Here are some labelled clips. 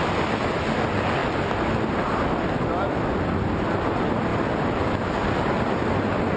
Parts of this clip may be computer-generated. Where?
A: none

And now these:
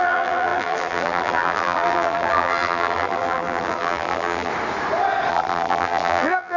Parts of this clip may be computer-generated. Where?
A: 0.0-4.5 (vocoder, BigVGAN v2); 5.3-6.6

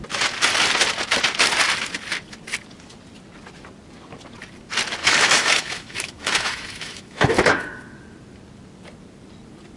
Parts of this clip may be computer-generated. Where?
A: 5.0-7.8 (autoencoder, DAC-VAE)

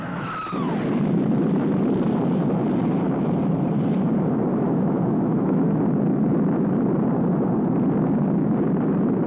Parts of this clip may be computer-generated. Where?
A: 4.5-5.8 (autoencoder, DAC-VAE)

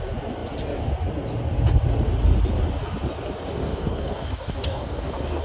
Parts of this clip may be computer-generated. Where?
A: 3.6-5.4 (codec, DAC)

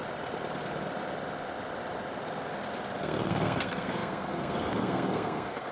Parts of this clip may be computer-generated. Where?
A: 3.0-5.7 (codec, SNAC)